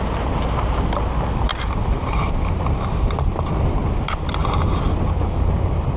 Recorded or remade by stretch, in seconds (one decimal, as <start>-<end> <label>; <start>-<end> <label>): 0.0-1.5 recorded; 1.5-2.5 remade; 2.5-4.4 recorded; 4.4-5.1 remade; 5.1-6.0 recorded